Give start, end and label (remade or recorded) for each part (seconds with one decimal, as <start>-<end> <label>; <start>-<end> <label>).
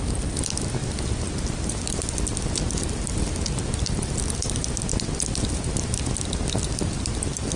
0.0-7.6 recorded